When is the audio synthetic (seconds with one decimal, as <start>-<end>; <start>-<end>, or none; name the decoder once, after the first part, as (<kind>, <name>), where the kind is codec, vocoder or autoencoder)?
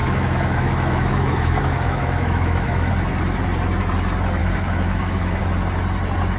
0.0-2.9 (autoencoder, DAC-VAE); 4.4-5.4